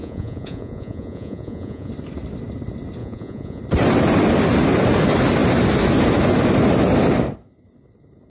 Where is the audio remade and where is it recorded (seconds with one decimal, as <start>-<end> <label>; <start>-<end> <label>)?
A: 0.0-1.9 remade; 1.9-3.0 recorded; 3.0-3.6 remade; 3.6-8.3 recorded